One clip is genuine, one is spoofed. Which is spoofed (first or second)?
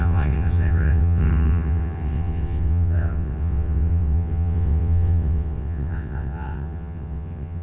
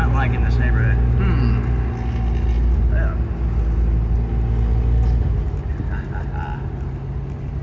first